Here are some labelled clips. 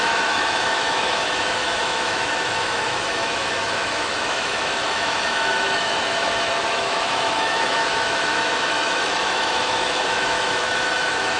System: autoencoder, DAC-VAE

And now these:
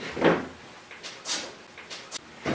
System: none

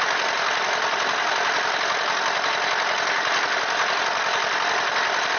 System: none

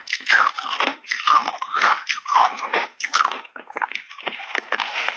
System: autoencoder, DAC-VAE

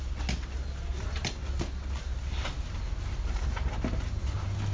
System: none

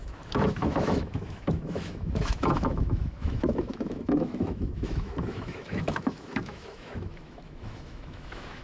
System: autoencoder, DAC-VAE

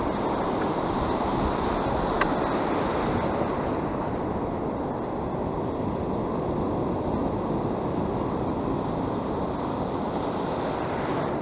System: none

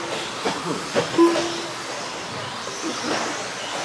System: none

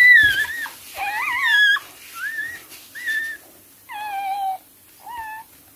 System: none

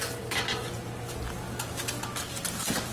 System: none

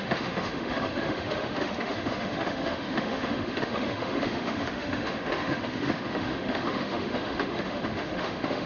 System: autoencoder, DAC-VAE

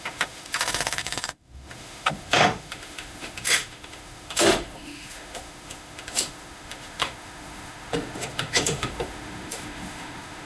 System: autoencoder, DAC-VAE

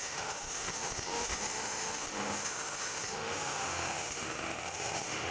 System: autoencoder, DAC-VAE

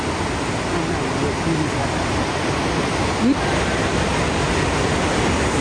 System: none